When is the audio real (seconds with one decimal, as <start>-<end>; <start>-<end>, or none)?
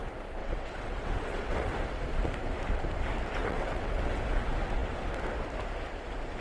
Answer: 0.0-0.4; 1.7-3.4; 4.2-6.4